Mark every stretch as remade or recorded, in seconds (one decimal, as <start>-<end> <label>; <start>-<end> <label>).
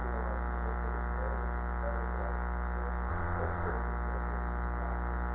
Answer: 0.0-3.1 recorded; 3.1-3.7 remade; 3.7-5.3 recorded